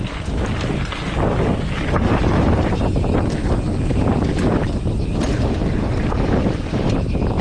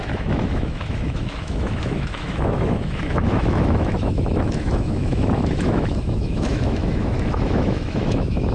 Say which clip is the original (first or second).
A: first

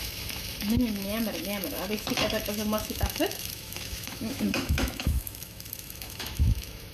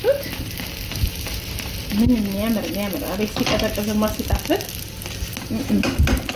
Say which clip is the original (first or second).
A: second